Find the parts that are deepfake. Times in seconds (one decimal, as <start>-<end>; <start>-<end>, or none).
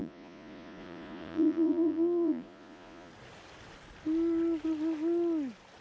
0.0-3.1